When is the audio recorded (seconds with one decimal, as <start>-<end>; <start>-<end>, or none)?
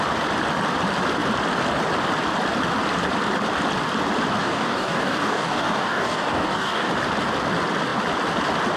0.0-4.4; 6.9-8.8